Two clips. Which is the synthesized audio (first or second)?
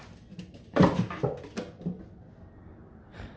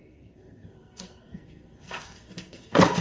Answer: second